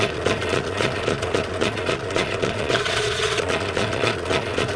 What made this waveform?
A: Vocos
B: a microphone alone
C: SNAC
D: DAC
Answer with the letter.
A